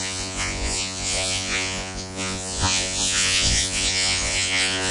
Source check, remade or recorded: remade